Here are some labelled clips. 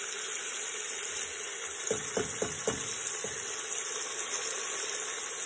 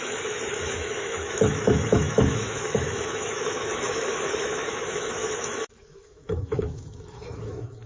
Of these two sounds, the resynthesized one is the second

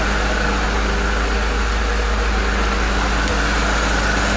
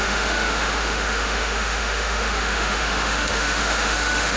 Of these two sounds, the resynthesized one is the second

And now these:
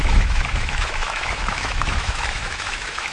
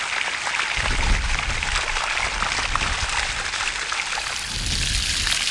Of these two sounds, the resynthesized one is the first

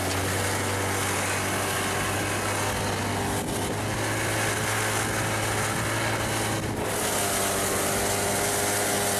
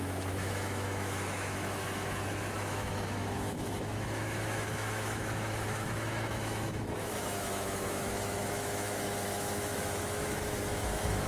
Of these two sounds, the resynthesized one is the second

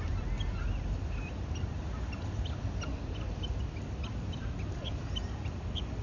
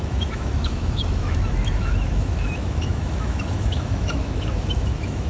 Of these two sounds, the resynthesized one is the second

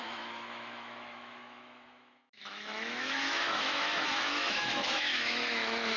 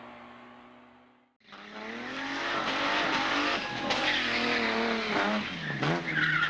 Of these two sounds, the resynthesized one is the first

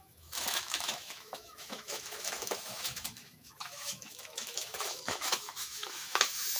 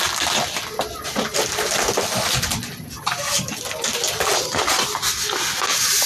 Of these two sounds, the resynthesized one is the first